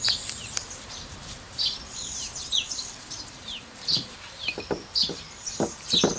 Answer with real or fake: fake